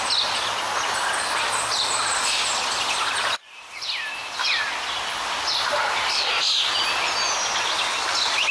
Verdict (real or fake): real